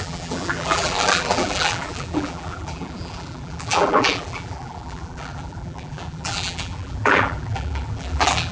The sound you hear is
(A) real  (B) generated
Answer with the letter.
B